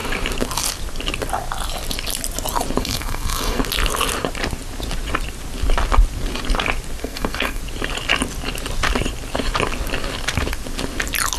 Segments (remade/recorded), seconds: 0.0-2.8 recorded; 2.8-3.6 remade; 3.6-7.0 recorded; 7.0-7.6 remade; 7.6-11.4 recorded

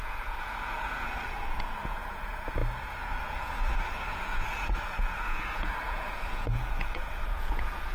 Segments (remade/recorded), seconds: 0.0-7.9 remade

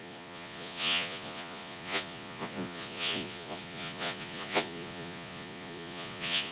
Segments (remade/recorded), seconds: 0.0-6.5 remade

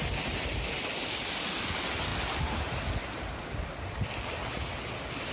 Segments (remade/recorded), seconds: 0.0-5.3 recorded

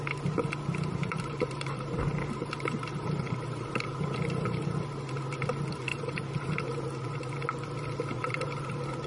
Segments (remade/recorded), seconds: 0.0-1.0 recorded; 1.0-4.6 remade; 4.6-5.9 recorded; 5.9-6.6 remade; 6.6-9.1 recorded